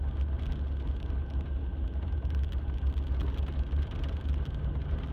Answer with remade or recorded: recorded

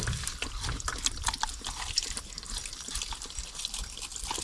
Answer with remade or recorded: recorded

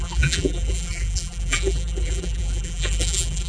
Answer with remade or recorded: remade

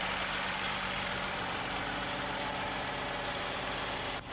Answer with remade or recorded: remade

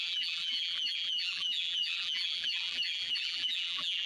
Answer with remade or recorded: remade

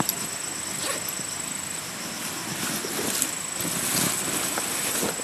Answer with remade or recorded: recorded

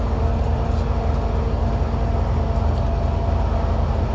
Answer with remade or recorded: recorded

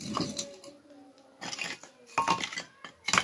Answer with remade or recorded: recorded